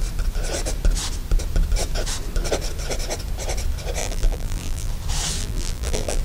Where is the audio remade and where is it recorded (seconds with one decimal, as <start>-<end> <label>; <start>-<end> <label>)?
0.0-4.0 recorded; 4.0-4.9 remade; 4.9-5.4 recorded; 5.4-6.2 remade